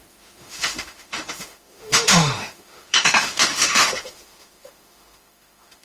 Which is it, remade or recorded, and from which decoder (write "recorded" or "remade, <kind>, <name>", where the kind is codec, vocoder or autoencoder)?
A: remade, autoencoder, DAC-VAE